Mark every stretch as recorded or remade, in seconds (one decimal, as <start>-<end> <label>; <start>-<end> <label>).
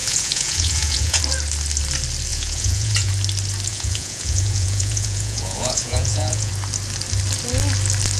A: 0.0-1.2 remade; 1.2-2.3 recorded; 2.3-3.1 remade; 3.1-3.7 recorded; 3.7-6.5 remade; 6.5-8.2 recorded